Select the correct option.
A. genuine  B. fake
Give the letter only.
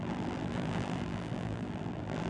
B